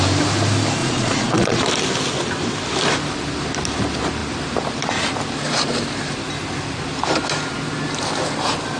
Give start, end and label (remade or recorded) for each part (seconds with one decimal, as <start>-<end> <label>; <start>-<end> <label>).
0.0-0.8 recorded; 0.8-1.6 remade; 1.6-8.8 recorded